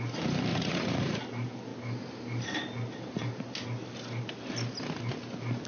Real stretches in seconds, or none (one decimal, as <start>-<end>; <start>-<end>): 0.0-0.5; 1.2-5.7